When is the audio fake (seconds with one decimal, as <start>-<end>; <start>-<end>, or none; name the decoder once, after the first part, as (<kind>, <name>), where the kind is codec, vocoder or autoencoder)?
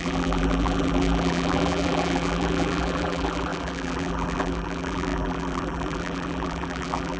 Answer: 0.0-7.2 (vocoder, BigVGAN v2)